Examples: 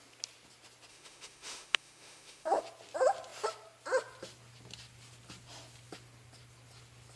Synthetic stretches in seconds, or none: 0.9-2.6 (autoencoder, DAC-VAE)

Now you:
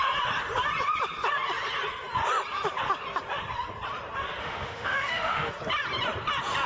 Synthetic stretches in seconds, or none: 4.4-5.5 (autoencoder, DAC-VAE)

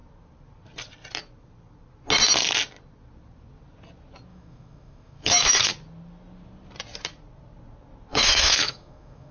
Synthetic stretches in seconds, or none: 4.3-5.7 (autoencoder, DAC-VAE); 8.1-9.3

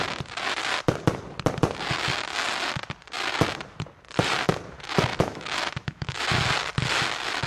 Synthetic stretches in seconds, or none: 5.1-6.2 (autoencoder, DAC-VAE)